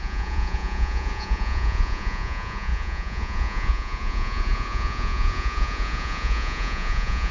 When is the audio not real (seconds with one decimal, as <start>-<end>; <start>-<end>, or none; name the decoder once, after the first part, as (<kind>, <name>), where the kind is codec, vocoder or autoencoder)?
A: 0.0-7.3 (vocoder, Vocos)